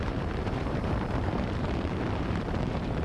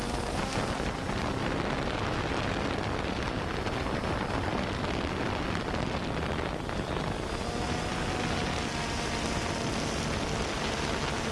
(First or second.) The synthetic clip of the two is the first